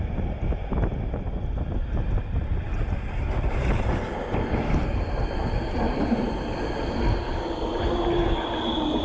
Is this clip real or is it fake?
real